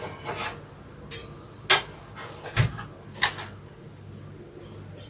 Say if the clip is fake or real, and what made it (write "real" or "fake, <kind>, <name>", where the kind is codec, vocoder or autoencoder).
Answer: real